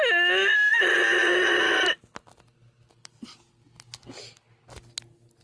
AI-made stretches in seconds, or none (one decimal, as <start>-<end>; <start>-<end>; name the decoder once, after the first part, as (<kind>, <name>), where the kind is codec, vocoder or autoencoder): 0.7-3.5 (vocoder, BigVGAN v2)